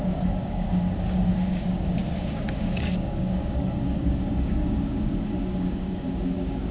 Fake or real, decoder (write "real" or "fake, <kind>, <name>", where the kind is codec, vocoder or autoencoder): fake, codec, DAC